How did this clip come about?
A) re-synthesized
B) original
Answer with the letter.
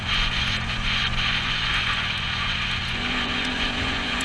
A